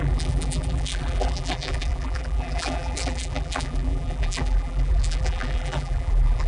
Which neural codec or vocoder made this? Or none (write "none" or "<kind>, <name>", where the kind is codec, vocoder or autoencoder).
vocoder, BigVGAN v2